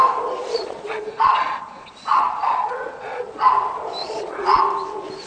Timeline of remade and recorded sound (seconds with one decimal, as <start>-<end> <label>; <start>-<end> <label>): 0.0-0.4 recorded; 0.4-3.5 remade; 3.5-4.0 recorded; 4.0-4.6 remade; 4.6-5.3 recorded